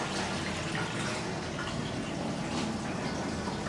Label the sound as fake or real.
real